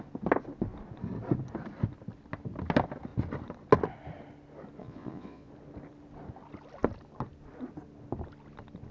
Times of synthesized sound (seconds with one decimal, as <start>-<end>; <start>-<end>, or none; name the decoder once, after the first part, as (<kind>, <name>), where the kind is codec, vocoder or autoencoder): 4.8-5.5 (vocoder, Vocos)